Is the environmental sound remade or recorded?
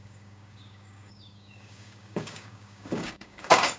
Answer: remade